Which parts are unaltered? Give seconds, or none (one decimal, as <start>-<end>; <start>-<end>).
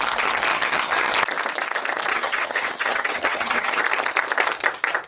0.0-0.5; 1.1-2.1; 3.8-5.1